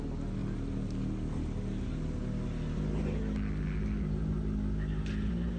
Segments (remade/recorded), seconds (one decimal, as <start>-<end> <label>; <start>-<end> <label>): 0.0-5.6 recorded